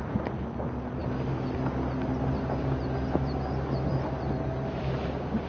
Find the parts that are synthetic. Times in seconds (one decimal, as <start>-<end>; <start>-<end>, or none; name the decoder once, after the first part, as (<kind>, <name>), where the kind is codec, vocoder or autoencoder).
none